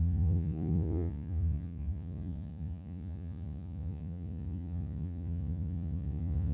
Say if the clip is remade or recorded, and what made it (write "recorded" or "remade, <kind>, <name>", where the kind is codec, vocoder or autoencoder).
remade, vocoder, Vocos